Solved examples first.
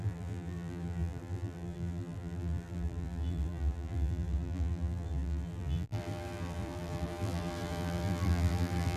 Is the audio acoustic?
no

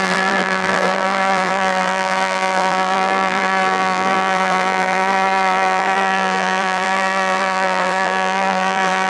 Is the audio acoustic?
no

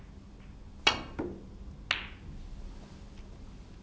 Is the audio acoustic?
yes